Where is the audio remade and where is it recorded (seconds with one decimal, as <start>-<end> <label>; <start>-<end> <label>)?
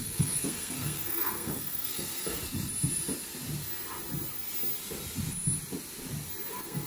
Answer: 0.0-2.4 remade; 2.4-6.5 recorded; 6.5-6.9 remade